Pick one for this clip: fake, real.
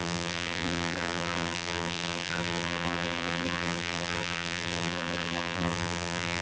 fake